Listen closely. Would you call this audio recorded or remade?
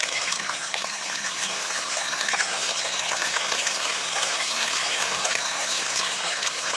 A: remade